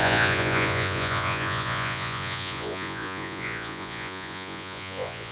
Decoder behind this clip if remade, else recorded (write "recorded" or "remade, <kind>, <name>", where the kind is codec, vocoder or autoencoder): remade, vocoder, Vocos